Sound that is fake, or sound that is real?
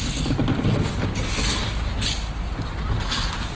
real